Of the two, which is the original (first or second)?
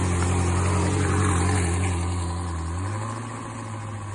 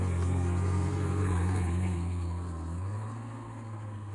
first